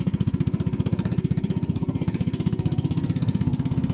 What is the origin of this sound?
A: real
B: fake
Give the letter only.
B